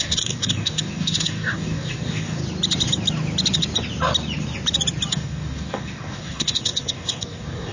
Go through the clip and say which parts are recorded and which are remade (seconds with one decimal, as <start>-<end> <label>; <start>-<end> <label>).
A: 0.0-2.4 remade; 2.4-5.1 recorded; 5.1-7.7 remade